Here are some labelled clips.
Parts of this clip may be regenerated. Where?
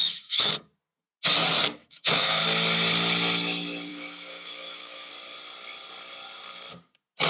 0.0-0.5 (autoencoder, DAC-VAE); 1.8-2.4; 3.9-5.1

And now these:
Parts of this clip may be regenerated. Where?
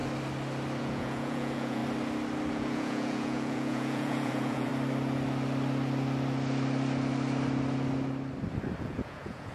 0.8-1.8 (vocoder, Vocos); 2.5-4.7; 8.8-9.5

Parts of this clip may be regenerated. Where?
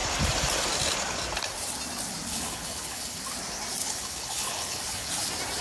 2.3-3.2 (codec, HILCodec); 3.8-5.1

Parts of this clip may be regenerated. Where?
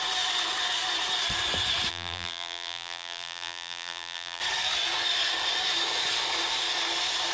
1.9-4.4 (vocoder, BigVGAN v2)